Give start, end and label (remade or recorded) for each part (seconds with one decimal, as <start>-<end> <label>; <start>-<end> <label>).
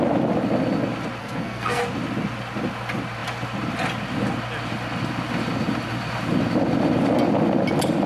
0.0-1.2 recorded; 1.2-1.8 remade; 1.8-8.1 recorded